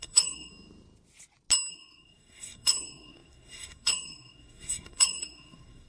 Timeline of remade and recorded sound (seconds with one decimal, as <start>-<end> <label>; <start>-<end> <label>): 0.0-0.5 remade; 0.5-1.7 recorded; 1.7-5.9 remade

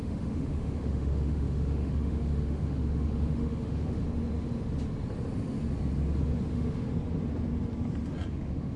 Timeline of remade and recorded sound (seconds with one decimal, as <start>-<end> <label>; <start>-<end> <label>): 0.0-4.0 remade; 4.0-6.5 recorded; 6.5-6.9 remade; 6.9-8.3 recorded; 8.3-8.8 remade

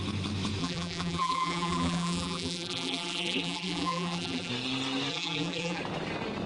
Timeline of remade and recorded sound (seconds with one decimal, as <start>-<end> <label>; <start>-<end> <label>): 0.0-0.6 recorded; 0.6-4.5 remade; 4.5-5.1 recorded; 5.1-5.8 remade; 5.8-6.5 recorded